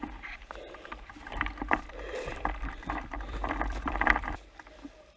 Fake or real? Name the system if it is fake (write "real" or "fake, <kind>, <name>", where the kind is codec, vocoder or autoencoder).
fake, vocoder, BigVGAN v2